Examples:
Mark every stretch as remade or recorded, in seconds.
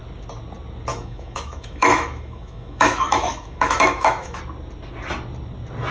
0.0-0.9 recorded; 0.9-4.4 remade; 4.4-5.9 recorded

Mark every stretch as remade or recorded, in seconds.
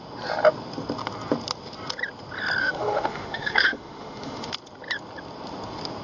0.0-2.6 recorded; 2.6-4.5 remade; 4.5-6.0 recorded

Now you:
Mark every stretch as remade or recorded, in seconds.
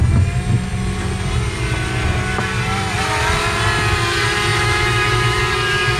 0.0-4.5 recorded; 4.5-5.4 remade; 5.4-6.0 recorded